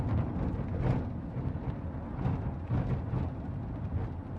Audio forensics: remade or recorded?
recorded